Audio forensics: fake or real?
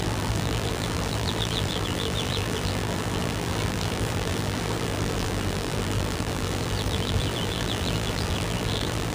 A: fake